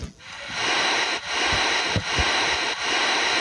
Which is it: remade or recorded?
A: recorded